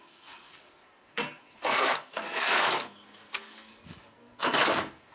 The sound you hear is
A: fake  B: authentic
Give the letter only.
A